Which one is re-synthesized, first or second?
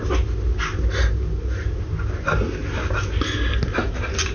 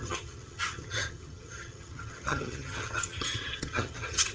second